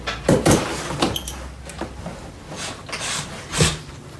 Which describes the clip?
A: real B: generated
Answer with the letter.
A